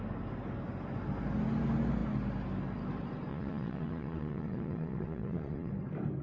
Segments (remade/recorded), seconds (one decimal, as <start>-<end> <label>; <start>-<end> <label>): 0.0-3.3 recorded; 3.3-5.7 remade; 5.7-6.2 recorded